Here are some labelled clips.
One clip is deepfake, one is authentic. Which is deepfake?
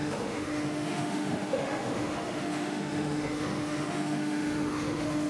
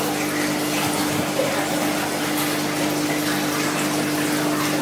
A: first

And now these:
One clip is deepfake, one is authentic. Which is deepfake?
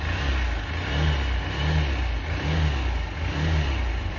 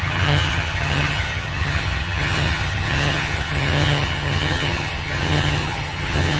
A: second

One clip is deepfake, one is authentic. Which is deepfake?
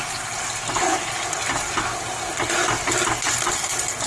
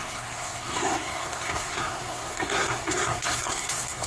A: second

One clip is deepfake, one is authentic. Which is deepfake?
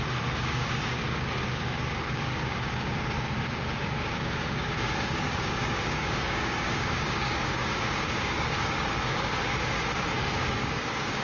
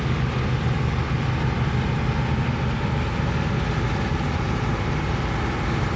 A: first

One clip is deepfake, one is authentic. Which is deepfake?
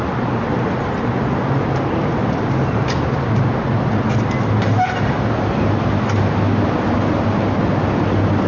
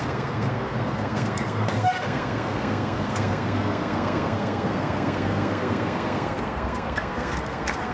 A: second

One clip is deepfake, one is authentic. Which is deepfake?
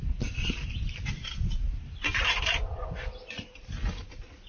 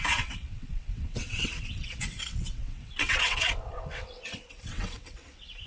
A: second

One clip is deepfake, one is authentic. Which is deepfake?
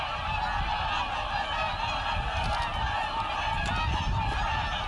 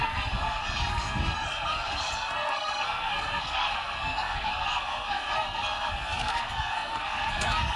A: second